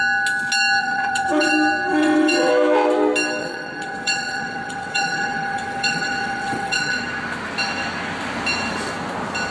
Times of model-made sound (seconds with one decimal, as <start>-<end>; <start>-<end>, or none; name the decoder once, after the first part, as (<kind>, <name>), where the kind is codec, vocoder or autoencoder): 0.8-1.5 (vocoder, WaveNeXt); 1.9-2.5; 3.4-7.0